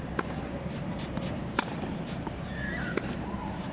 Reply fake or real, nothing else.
fake